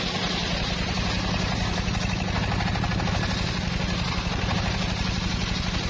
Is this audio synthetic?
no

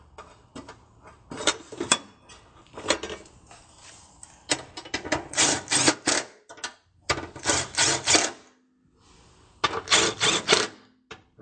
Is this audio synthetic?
no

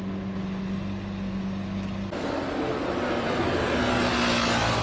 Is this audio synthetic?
no